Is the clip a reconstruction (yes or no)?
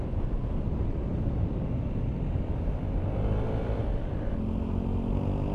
no